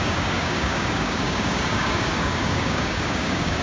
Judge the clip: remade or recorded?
remade